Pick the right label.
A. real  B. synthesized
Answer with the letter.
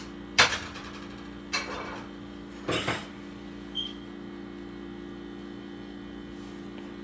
A